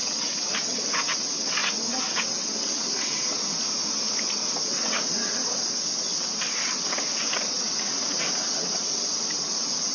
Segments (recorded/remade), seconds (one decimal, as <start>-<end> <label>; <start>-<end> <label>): 0.0-3.5 remade; 3.5-4.2 recorded; 4.2-9.9 remade